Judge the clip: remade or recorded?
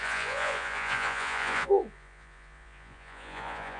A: remade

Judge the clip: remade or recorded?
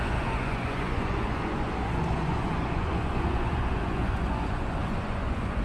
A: remade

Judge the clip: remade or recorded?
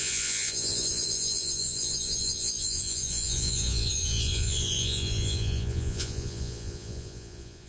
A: remade